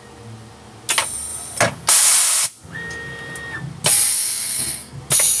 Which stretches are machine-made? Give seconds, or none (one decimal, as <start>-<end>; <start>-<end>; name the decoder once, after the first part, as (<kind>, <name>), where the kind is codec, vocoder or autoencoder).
4.1-5.0 (codec, SNAC)